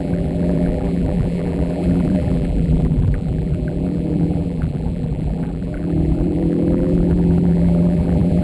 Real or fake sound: fake